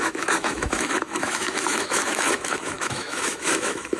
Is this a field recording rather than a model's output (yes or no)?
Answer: no